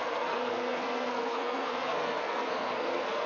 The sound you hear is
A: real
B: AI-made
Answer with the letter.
B